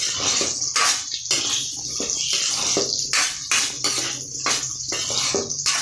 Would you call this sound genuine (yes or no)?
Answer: yes